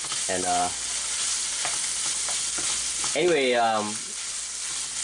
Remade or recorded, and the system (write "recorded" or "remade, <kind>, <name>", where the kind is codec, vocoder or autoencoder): recorded